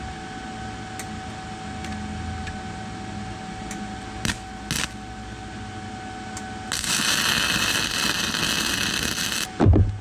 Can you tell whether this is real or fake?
real